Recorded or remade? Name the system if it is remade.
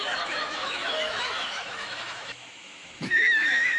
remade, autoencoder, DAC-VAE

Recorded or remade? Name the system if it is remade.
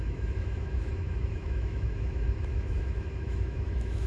remade, autoencoder, DAC-VAE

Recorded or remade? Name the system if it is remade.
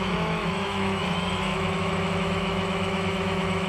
remade, autoencoder, DAC-VAE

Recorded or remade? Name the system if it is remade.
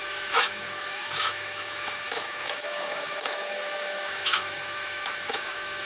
remade, autoencoder, DAC-VAE